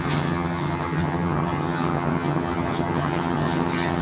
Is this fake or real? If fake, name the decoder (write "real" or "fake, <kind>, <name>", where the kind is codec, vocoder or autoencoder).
fake, vocoder, HiFi-GAN